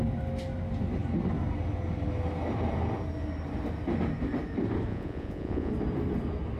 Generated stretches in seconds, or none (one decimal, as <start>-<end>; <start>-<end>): 4.9-5.7